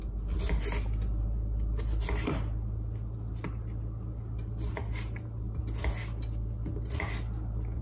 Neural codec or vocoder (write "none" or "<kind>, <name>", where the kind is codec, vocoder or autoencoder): none